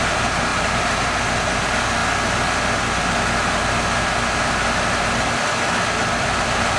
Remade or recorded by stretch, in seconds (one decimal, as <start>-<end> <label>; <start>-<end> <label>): 0.0-2.0 remade; 2.0-6.1 recorded; 6.1-6.8 remade